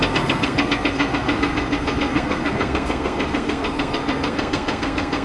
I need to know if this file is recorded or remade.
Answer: remade